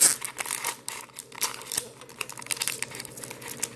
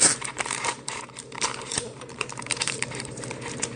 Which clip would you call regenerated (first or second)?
second